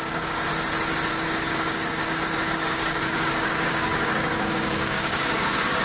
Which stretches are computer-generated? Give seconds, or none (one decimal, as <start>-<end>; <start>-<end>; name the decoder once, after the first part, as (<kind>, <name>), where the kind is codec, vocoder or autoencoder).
0.0-0.5 (codec, DAC); 1.1-5.8